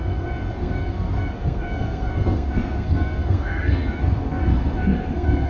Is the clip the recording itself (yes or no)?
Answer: no